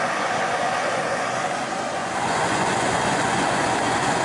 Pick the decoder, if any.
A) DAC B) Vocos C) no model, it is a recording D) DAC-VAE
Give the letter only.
B